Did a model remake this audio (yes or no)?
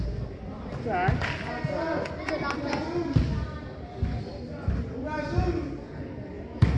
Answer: no